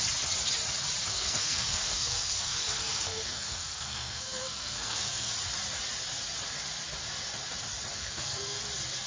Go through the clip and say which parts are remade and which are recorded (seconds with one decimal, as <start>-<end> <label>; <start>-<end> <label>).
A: 0.0-1.1 recorded; 1.1-5.3 remade; 5.3-7.9 recorded; 7.9-8.6 remade; 8.6-9.1 recorded